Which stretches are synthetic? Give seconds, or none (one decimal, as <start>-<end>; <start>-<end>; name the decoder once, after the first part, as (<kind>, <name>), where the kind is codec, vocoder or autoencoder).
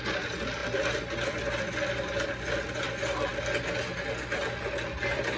none